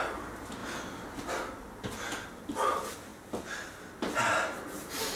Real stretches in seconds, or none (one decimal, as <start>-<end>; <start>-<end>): 0.0-5.2